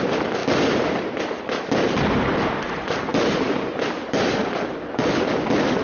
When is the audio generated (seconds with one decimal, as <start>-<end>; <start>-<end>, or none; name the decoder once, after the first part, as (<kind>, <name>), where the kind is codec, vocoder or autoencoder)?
0.4-0.9 (vocoder, BigVGAN v2); 3.1-4.4